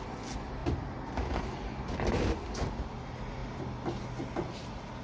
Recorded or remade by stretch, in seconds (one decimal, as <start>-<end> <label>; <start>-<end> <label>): 0.0-5.0 recorded